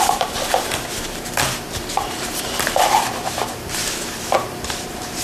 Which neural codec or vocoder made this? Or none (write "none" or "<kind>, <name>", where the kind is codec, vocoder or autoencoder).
vocoder, BigVGAN v2